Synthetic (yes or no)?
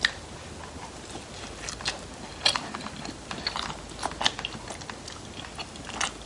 no